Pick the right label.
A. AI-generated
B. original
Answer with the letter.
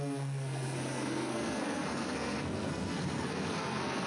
A